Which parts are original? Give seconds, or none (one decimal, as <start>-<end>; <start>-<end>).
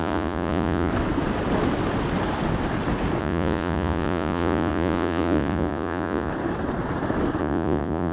0.9-3.2; 6.3-7.4